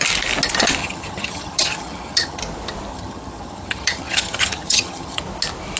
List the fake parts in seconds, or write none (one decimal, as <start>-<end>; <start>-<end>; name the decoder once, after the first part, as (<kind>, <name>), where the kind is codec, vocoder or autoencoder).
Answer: 0.8-2.4 (vocoder, HiFi-GAN); 2.9-5.2